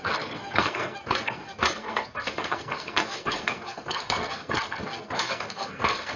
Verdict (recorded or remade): remade